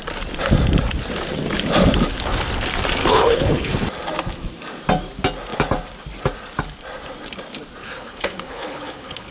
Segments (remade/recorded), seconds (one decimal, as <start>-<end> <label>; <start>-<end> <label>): 0.0-3.0 recorded; 3.0-3.7 remade; 3.7-7.8 recorded; 7.8-9.3 remade